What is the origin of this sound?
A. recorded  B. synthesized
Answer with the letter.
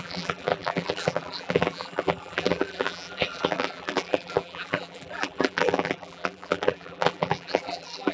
B